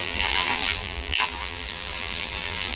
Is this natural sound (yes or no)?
no